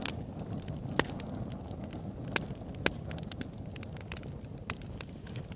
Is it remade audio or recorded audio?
recorded